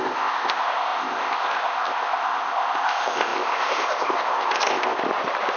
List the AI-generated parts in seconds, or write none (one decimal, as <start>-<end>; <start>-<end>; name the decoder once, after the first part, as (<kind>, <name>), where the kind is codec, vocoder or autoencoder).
0.0-5.0 (codec, ZipCodec)